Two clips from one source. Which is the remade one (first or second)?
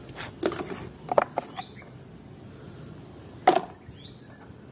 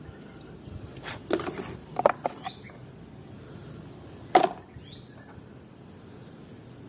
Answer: second